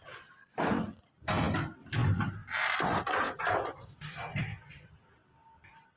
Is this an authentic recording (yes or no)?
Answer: yes